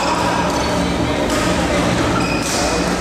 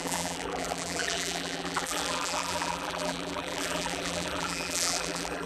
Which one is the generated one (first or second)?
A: second